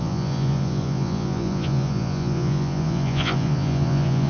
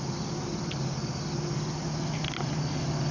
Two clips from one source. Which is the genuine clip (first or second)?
second